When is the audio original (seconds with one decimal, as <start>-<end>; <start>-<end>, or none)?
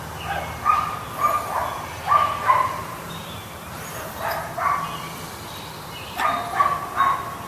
0.0-2.8; 4.2-7.5